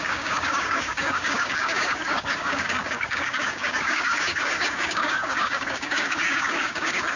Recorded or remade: remade